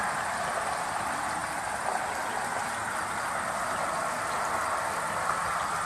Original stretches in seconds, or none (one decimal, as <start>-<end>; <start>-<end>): 0.0-5.9